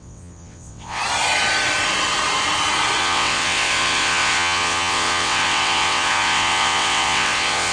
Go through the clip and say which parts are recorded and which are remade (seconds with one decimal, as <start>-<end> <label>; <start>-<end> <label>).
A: 0.0-1.0 remade; 1.0-3.0 recorded; 3.0-7.7 remade